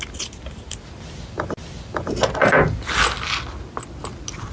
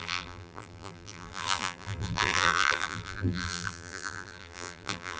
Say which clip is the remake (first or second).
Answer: second